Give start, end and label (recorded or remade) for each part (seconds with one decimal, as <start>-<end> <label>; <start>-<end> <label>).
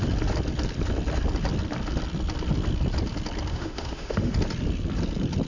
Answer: 0.0-3.5 recorded; 3.5-4.3 remade; 4.3-5.5 recorded